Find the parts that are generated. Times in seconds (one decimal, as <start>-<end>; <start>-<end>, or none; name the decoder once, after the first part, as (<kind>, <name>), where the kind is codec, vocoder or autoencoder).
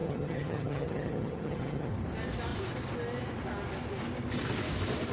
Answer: 0.0-1.9 (vocoder, HiFi-GAN)